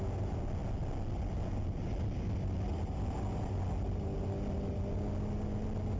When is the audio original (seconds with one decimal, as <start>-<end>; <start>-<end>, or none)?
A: 0.0-6.0